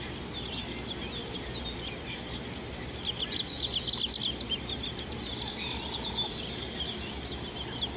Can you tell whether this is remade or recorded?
recorded